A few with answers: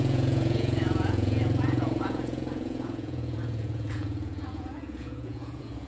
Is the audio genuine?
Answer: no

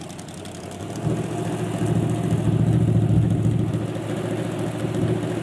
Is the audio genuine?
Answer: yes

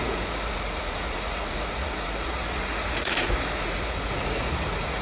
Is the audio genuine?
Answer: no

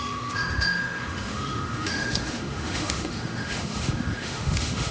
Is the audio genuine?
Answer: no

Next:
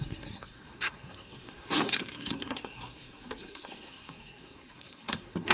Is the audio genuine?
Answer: no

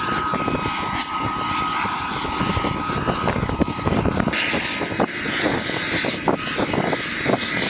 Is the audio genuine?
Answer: yes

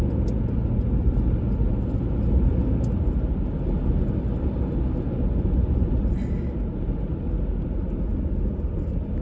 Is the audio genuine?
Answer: yes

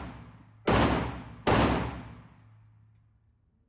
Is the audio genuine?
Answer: yes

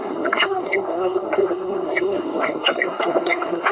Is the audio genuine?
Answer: no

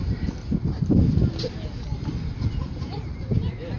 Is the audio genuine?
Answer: yes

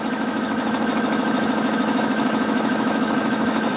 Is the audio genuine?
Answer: no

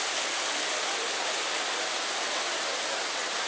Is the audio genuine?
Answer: yes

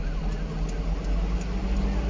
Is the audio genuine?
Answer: yes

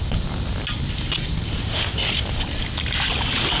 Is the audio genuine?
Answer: yes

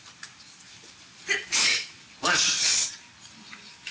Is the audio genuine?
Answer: yes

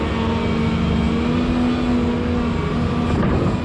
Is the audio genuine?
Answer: yes